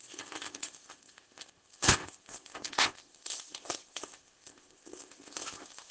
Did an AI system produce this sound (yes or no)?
yes